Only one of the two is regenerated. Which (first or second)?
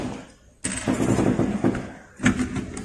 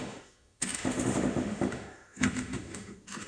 second